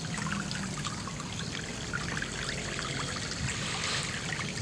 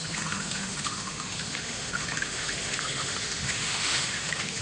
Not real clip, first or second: second